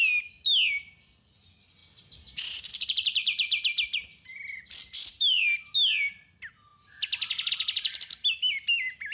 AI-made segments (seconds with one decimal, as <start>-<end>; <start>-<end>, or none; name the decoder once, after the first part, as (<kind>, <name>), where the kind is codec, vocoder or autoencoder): 4.1-5.4 (vocoder, BigVGAN v2); 6.7-7.5